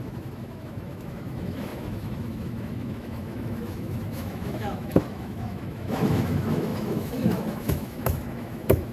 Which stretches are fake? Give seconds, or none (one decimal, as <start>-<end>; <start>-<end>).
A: 0.0-8.9